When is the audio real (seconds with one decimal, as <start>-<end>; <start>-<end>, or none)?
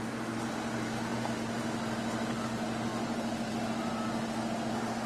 0.0-5.1